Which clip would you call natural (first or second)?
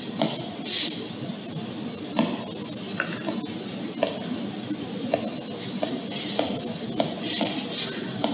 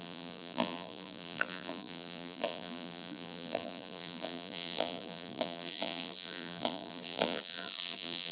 first